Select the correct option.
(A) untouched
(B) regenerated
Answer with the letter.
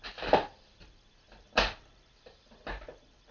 A